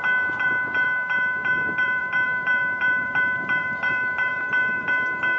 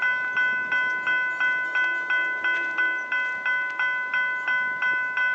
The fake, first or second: first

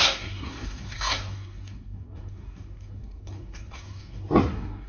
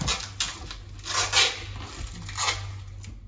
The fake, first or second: first